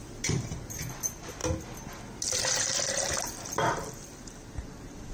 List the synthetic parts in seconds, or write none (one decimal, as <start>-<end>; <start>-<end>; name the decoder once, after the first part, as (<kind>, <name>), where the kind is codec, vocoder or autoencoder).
0.0-1.4 (vocoder, BigVGAN v2); 4.5-5.1